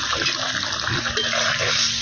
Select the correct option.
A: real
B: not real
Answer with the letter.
A